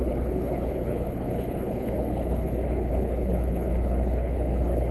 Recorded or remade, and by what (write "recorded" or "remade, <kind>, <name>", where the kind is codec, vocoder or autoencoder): remade, codec, HILCodec